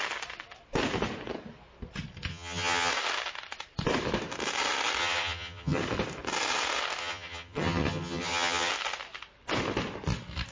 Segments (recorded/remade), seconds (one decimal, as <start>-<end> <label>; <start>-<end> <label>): 0.0-2.3 recorded; 2.3-2.9 remade; 2.9-5.0 recorded; 5.0-5.8 remade; 5.8-7.0 recorded; 7.0-8.7 remade; 8.7-10.5 recorded